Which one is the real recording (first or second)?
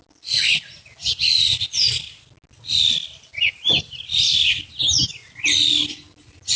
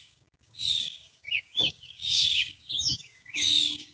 first